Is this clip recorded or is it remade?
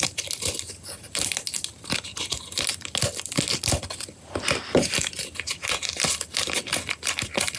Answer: recorded